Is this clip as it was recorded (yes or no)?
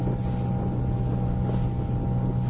yes